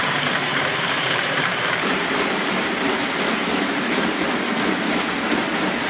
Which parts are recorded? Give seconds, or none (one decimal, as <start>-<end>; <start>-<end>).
0.0-0.5; 3.0-5.9